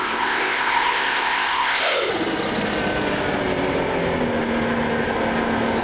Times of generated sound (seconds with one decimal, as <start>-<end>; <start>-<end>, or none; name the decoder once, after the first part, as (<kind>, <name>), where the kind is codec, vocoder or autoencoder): 0.0-2.1 (codec, ZipCodec)

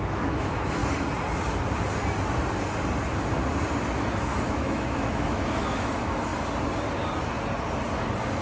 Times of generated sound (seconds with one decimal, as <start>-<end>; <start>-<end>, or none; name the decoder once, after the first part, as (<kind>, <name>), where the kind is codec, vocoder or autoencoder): 0.0-0.8 (autoencoder, DAC-VAE); 4.2-6.3

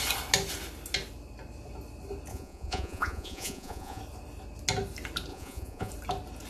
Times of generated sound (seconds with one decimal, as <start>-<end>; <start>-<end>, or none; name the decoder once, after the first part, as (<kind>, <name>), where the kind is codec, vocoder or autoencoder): 2.3-4.0 (vocoder, Vocos); 5.3-5.9